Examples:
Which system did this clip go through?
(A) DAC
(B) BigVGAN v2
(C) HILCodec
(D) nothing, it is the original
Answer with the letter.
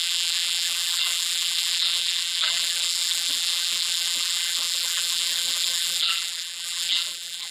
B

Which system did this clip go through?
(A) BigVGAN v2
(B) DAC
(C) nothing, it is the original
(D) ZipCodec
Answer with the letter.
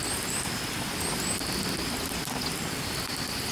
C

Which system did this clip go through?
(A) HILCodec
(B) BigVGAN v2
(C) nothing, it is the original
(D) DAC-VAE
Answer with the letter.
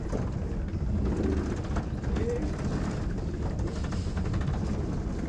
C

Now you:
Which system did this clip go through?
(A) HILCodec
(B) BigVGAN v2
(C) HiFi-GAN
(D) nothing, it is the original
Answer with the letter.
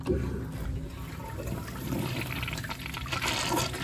D